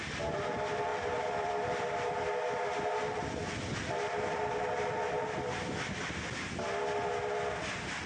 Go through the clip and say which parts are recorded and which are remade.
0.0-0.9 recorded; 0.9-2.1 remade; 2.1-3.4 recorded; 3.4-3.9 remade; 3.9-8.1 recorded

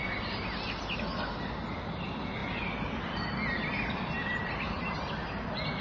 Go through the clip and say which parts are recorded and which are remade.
0.0-4.4 recorded; 4.4-5.0 remade; 5.0-5.8 recorded

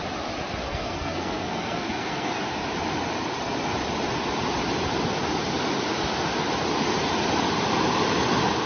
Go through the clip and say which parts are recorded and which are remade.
0.0-0.6 recorded; 0.6-2.4 remade; 2.4-8.7 recorded